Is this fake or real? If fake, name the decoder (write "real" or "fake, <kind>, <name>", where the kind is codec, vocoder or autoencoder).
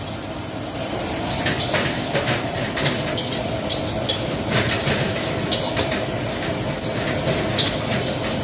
real